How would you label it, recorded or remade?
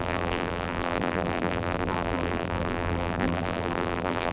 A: remade